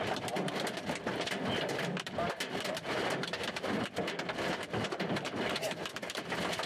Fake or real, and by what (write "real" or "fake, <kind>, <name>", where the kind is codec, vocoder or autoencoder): fake, vocoder, BigVGAN v2